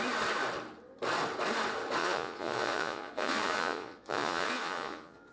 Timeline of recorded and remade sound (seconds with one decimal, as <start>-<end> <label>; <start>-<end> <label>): 0.0-2.0 recorded; 2.0-5.3 remade